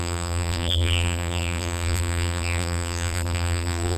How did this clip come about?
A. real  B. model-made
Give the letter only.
B